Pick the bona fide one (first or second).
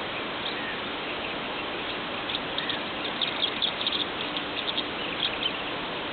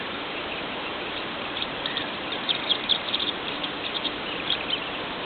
first